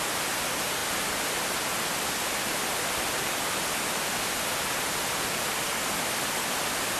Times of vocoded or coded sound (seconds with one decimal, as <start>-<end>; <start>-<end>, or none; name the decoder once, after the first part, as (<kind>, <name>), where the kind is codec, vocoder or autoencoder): none